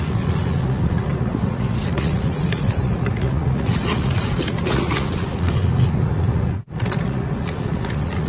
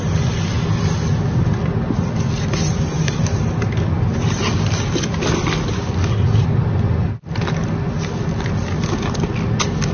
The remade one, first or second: first